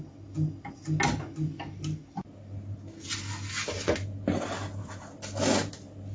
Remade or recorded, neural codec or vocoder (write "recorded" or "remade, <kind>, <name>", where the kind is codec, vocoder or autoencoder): recorded